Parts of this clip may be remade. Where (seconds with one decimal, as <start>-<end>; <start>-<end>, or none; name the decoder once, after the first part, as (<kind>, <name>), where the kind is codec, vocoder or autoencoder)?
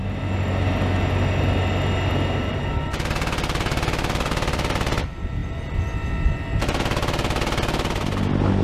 none